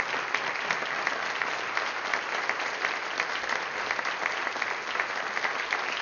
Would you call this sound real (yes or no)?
yes